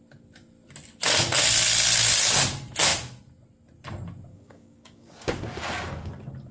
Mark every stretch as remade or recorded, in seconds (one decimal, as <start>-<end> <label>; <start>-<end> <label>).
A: 0.0-4.3 recorded; 4.3-6.1 remade; 6.1-6.5 recorded